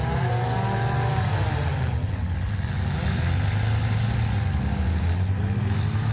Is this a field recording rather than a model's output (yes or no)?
yes